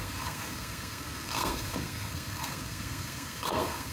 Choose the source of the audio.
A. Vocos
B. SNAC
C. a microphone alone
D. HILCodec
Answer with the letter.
B